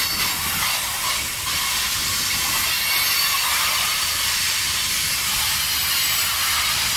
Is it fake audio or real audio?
real